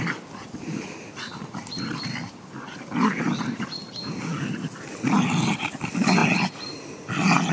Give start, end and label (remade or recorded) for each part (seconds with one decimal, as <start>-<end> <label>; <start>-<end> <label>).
0.0-7.5 recorded